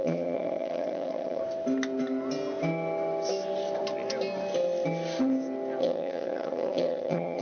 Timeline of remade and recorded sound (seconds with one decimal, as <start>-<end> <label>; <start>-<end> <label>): 0.0-1.4 remade; 1.4-5.8 recorded; 5.8-7.4 remade